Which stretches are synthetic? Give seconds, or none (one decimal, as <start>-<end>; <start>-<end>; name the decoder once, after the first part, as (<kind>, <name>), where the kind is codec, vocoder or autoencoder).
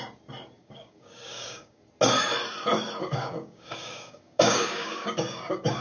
0.6-1.8 (codec, DAC); 3.0-5.8